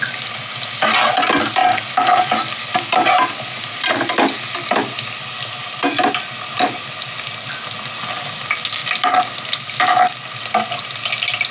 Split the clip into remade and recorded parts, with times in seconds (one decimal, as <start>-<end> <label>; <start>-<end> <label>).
0.0-11.5 recorded